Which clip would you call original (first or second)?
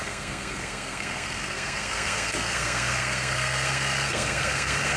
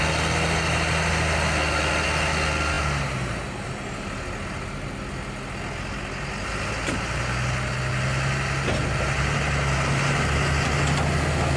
second